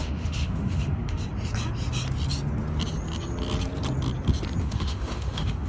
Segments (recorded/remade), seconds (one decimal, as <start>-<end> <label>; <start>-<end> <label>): 0.0-1.2 remade; 1.2-4.6 recorded; 4.6-5.7 remade